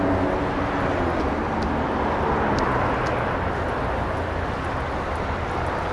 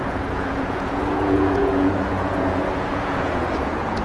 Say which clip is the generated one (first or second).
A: second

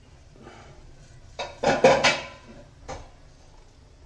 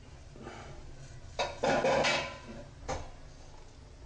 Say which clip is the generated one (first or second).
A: first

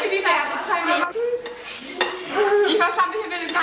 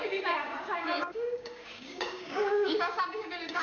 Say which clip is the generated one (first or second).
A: second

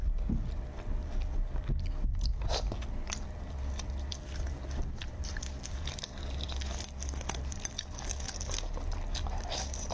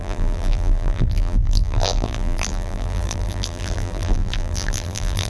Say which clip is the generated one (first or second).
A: second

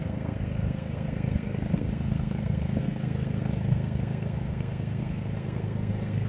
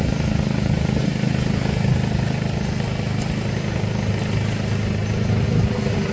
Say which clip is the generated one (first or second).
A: first